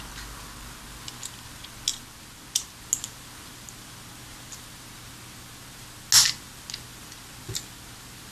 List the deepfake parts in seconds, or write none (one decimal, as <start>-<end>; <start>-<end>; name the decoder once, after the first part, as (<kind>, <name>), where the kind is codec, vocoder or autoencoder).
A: none